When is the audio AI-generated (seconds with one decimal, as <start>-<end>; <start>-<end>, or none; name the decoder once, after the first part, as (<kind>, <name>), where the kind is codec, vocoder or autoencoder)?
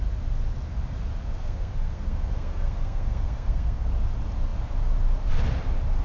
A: 1.2-3.9 (codec, SNAC)